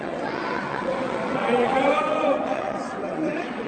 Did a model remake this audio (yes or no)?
yes